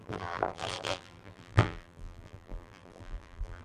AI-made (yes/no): yes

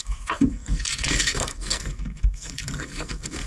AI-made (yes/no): yes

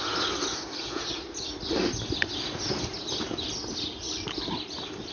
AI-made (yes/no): yes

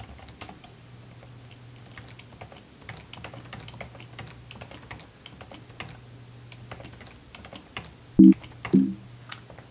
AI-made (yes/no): no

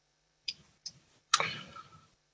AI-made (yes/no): yes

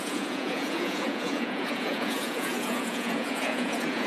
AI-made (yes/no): yes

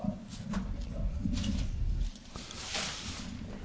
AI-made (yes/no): no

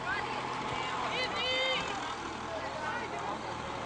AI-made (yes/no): no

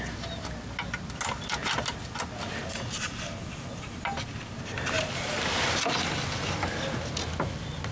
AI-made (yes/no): no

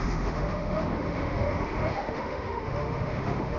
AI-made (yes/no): yes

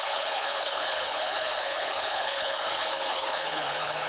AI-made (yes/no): yes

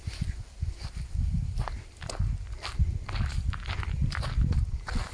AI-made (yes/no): no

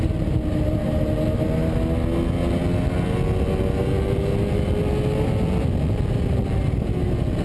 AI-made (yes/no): no